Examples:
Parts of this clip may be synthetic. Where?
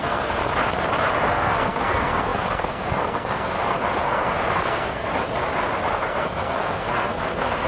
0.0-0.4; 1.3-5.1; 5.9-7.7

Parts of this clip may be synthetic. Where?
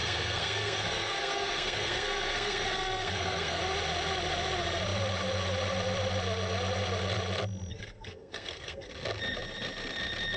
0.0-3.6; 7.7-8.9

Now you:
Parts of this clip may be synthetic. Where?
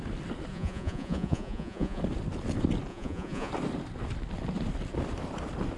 0.5-2.0; 2.9-3.5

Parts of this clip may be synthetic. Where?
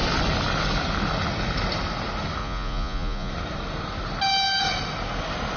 2.4-3.3